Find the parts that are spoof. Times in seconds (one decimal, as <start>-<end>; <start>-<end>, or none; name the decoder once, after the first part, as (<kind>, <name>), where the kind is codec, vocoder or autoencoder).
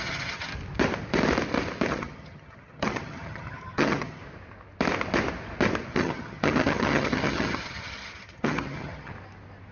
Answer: 0.0-0.5 (vocoder, HiFi-GAN); 1.9-4.2; 5.9-9.1